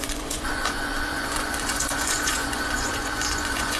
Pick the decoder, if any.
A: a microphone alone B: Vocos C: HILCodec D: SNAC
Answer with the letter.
B